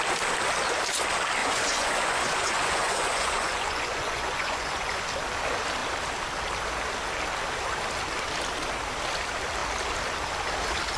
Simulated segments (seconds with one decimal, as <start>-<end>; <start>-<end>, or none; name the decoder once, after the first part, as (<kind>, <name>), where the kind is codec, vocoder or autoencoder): 1.4-5.0 (vocoder, Vocos)